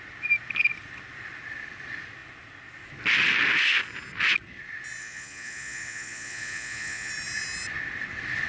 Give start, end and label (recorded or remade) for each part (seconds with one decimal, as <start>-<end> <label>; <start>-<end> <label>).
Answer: 0.0-5.0 recorded; 5.0-7.1 remade; 7.1-8.5 recorded